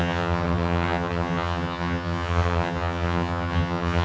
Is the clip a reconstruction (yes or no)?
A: yes